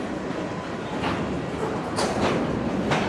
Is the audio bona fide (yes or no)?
yes